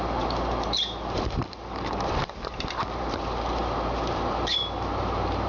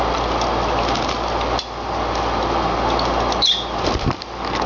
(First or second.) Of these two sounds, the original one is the second